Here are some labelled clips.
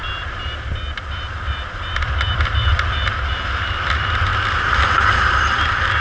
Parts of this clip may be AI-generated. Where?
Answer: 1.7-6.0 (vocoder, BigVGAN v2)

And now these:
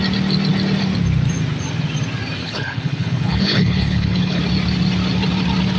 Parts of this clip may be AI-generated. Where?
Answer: 2.4-4.4 (codec, HILCodec)

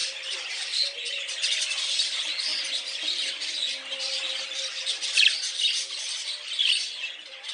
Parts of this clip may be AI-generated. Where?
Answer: 2.5-3.3 (vocoder, BigVGAN v2)

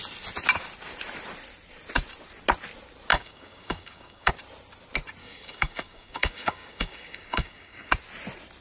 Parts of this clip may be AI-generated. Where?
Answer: 3.1-4.3 (codec, DAC); 5.2-7.9

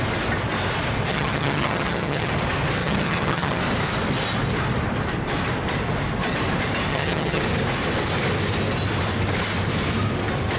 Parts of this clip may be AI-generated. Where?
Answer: 1.1-2.3 (vocoder, HiFi-GAN); 2.8-3.6; 6.9-7.4

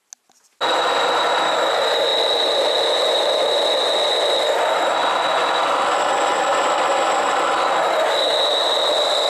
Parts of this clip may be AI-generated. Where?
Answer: none

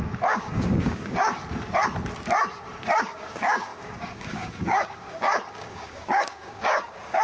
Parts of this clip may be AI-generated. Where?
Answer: 0.0-1.4 (codec, DAC); 3.0-7.2

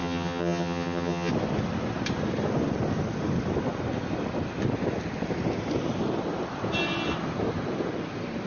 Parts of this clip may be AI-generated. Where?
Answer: 0.0-1.3 (vocoder, HiFi-GAN)